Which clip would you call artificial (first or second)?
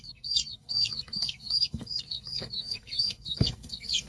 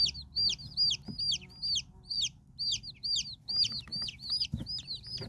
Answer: first